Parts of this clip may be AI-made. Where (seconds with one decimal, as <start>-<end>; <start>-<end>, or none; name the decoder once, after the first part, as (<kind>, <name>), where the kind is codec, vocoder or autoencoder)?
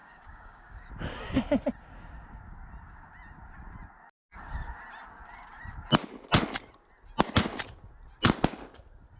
0.0-0.9 (codec, DAC)